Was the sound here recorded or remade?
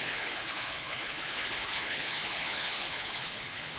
remade